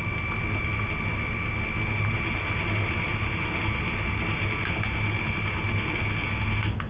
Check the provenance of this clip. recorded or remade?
recorded